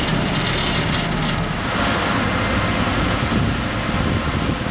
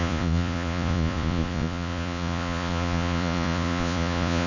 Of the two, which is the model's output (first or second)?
second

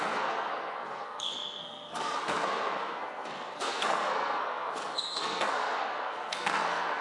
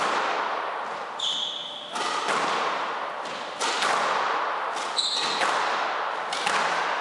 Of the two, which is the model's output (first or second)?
first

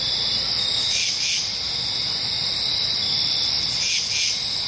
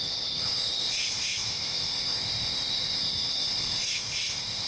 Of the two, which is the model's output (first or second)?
second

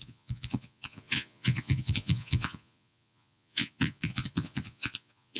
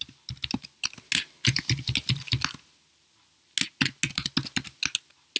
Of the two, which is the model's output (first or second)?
first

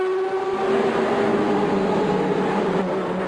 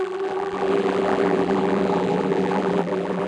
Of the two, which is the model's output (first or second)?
second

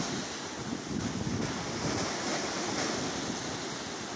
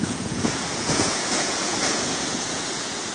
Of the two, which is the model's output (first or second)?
second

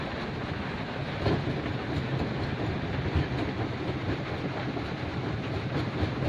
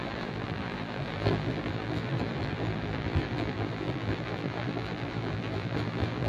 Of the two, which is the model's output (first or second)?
second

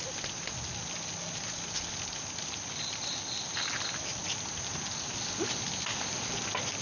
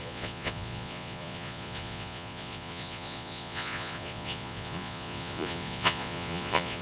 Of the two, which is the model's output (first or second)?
second